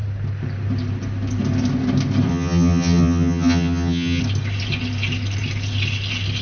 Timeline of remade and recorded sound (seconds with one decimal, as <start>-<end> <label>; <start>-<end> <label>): 0.0-2.3 recorded; 2.3-4.2 remade; 4.2-6.4 recorded